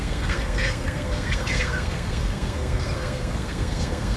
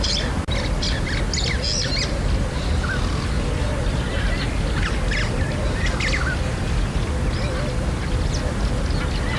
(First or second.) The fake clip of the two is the first